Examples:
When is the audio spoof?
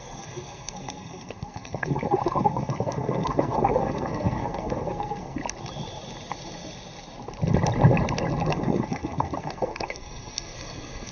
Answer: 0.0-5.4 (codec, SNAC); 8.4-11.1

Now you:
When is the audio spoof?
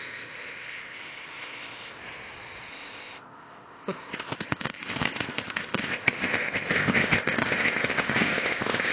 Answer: 0.0-2.0 (codec, ZipCodec); 2.7-8.9